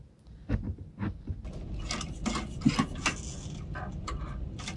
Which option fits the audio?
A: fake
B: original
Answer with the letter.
B